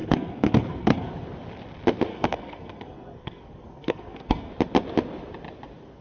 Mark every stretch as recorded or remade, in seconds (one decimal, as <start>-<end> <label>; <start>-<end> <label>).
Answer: 0.0-1.1 remade; 1.1-2.1 recorded; 2.1-4.5 remade; 4.5-6.0 recorded